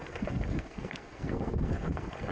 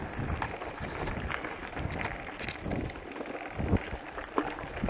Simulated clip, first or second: first